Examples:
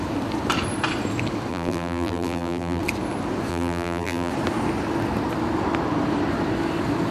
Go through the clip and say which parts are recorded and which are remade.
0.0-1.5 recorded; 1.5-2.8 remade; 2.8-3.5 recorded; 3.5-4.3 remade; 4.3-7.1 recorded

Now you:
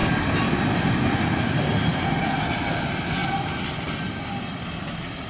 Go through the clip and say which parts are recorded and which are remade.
0.0-5.3 recorded

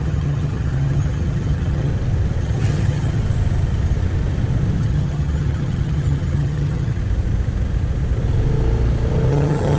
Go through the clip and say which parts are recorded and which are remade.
0.0-1.9 remade; 1.9-2.4 recorded; 2.4-3.2 remade; 3.2-4.8 recorded; 4.8-7.0 remade; 7.0-9.3 recorded; 9.3-9.8 remade